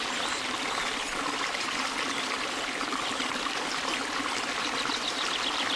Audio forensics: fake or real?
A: fake